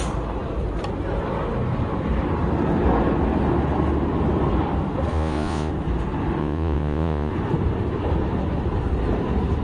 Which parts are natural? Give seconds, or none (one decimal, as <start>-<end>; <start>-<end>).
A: 0.0-5.1; 5.7-6.4; 7.3-9.6